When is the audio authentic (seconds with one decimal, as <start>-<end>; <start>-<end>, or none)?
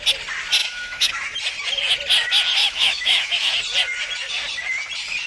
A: 0.0-0.6; 1.1-2.6; 3.5-5.3